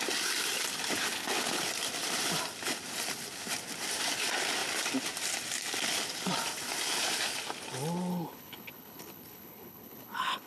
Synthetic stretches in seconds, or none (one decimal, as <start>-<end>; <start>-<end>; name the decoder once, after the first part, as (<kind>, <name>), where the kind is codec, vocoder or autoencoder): 1.0-1.6 (codec, HILCodec); 8.1-10.5